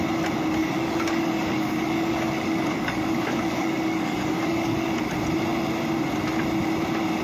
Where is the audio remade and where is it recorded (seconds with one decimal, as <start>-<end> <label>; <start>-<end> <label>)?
0.0-0.6 recorded; 0.6-4.9 remade; 4.9-7.2 recorded